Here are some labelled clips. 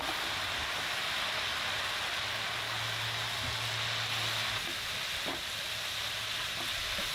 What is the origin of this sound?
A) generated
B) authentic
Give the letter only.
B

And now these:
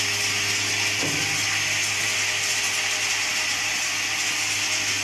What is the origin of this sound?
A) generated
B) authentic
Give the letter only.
B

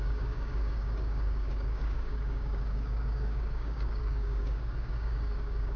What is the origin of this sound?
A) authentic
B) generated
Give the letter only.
B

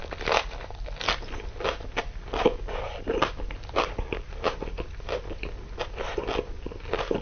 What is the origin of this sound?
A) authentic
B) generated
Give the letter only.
A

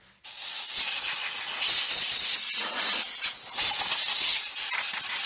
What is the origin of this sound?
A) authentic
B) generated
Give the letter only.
A